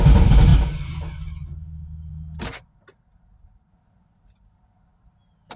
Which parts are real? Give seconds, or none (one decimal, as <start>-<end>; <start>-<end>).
0.0-5.6